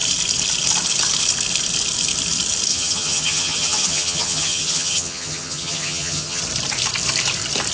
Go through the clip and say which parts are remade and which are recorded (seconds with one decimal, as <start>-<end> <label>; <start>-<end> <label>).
0.0-2.7 recorded; 2.7-6.4 remade; 6.4-7.7 recorded